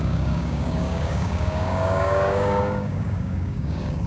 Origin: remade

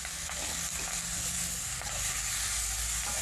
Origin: recorded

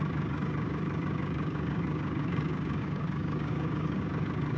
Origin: remade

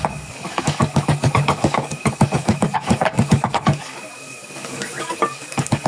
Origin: remade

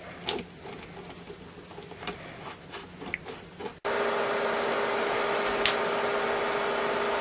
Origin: recorded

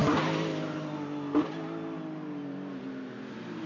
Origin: recorded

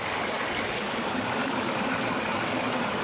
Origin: remade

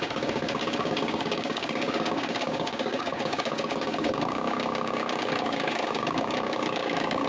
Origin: remade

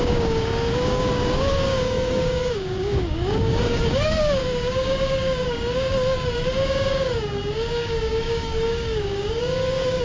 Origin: remade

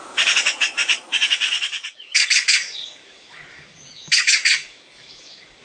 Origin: remade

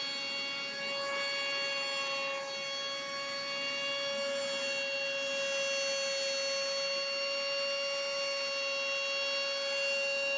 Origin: recorded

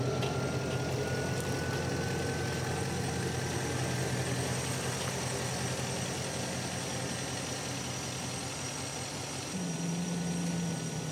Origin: recorded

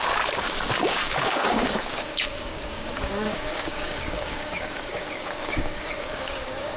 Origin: remade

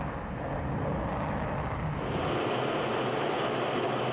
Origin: recorded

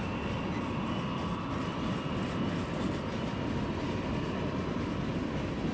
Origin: recorded